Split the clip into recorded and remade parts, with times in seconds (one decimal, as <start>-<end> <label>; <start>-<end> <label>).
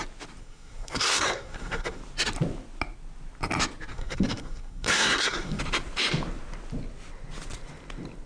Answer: 0.0-0.4 recorded; 0.4-2.0 remade; 2.0-3.9 recorded; 3.9-5.6 remade; 5.6-8.3 recorded